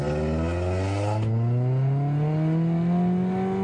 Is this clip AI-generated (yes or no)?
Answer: no